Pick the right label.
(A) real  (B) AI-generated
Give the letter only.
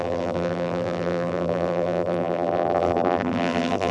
B